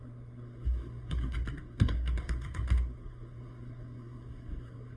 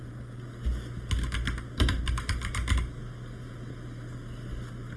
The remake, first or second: first